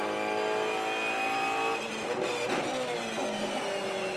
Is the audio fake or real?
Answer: real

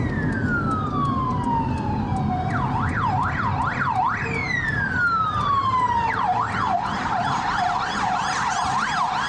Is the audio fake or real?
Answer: real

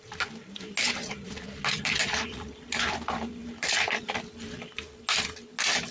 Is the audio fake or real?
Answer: real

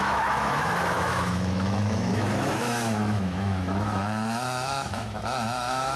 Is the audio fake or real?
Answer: fake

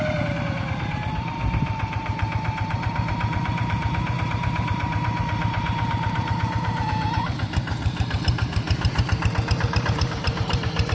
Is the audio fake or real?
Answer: fake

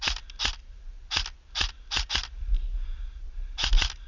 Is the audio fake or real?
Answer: real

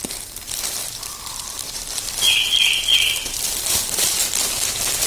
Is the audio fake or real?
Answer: fake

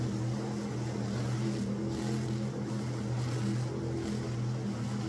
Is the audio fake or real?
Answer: real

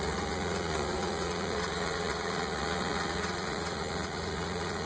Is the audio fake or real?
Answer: fake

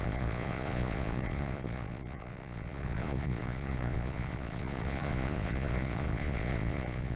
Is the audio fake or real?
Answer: fake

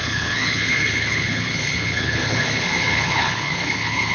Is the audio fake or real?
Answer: fake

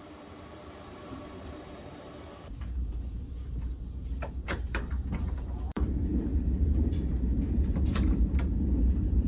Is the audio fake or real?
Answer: fake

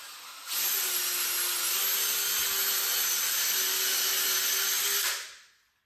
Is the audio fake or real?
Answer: real